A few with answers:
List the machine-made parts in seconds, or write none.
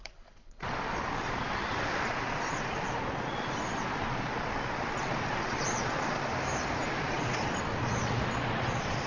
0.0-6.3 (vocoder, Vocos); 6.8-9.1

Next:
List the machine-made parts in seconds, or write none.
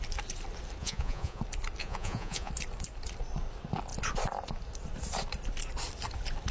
0.8-1.4 (vocoder, Vocos); 1.8-2.5